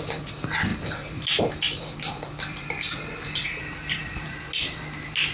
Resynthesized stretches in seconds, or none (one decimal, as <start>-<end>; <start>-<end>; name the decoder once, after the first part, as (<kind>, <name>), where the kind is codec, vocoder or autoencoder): none